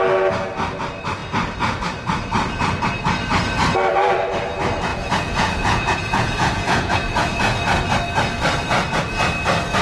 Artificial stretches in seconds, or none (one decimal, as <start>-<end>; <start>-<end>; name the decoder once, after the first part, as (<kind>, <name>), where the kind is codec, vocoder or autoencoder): 4.9-7.4 (vocoder, Vocos)

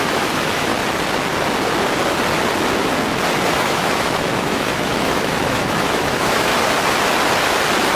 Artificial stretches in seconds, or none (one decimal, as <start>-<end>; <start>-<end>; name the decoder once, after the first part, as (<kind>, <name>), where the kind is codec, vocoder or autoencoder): 0.0-0.7 (autoencoder, DAC-VAE); 3.5-6.5

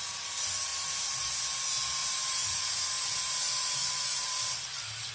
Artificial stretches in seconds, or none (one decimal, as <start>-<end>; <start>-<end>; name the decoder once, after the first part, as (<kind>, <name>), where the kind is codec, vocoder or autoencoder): 0.7-1.4 (vocoder, BigVGAN v2); 2.0-5.1

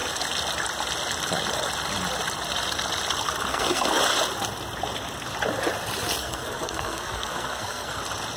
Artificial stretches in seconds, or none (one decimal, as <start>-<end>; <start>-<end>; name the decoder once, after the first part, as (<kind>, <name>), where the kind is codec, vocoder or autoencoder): 3.5-4.0 (codec, SNAC); 6.2-8.0

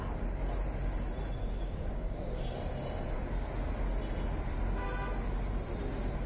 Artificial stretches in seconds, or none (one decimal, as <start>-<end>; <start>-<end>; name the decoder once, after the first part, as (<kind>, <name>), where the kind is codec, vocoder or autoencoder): 1.4-2.4 (codec, DAC)

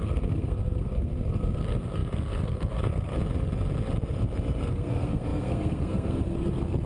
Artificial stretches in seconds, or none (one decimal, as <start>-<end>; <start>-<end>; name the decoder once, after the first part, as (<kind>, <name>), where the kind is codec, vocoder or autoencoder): 0.0-3.1 (codec, SNAC); 4.6-6.9